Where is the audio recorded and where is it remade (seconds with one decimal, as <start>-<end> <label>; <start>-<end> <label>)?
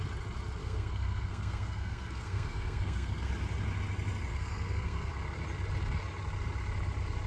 0.0-0.6 recorded; 0.6-3.3 remade; 3.3-4.3 recorded; 4.3-5.1 remade; 5.1-7.3 recorded